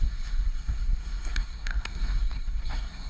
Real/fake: fake